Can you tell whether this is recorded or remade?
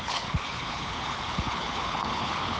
remade